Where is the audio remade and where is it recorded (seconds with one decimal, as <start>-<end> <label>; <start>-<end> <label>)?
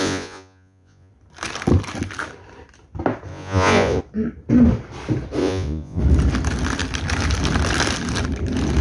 0.0-1.1 remade; 1.1-3.3 recorded; 3.3-4.0 remade; 4.0-5.4 recorded; 5.4-6.0 remade; 6.0-8.8 recorded